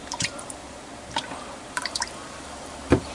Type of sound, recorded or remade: remade